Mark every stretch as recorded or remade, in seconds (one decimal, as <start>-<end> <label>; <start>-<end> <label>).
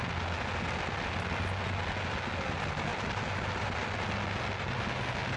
0.0-5.4 recorded